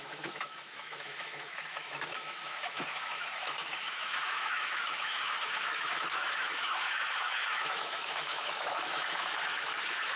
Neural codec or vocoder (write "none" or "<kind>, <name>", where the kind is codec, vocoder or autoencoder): autoencoder, DAC-VAE